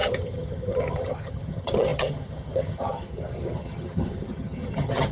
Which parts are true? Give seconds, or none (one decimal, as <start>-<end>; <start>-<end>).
none